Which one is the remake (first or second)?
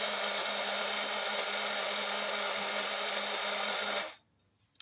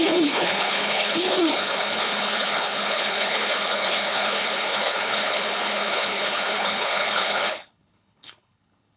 second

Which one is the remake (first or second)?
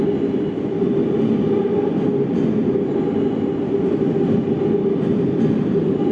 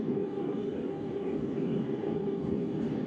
second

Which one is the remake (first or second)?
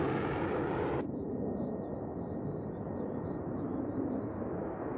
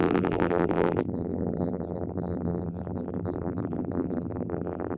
second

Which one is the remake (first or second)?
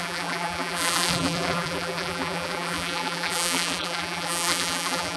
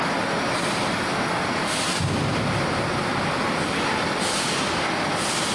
first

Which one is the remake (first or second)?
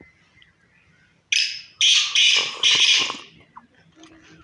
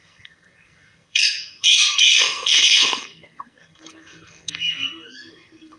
second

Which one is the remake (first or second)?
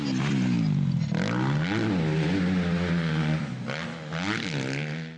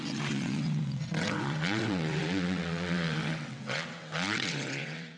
second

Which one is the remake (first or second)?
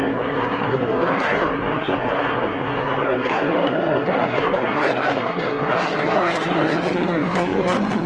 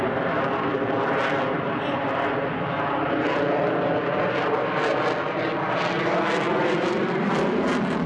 first